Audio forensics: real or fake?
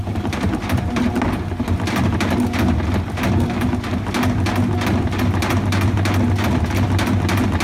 real